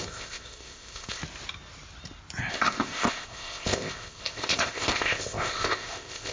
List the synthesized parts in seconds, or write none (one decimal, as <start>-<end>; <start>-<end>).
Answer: 0.0-1.2; 2.5-6.3